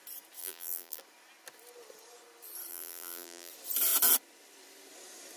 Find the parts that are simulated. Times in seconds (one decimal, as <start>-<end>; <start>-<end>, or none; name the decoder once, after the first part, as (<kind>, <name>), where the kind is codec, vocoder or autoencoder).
0.4-1.0 (vocoder, BigVGAN v2); 2.7-3.5